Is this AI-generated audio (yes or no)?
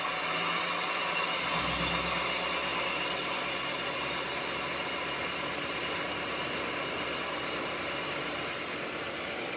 no